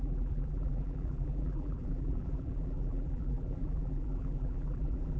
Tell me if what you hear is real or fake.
fake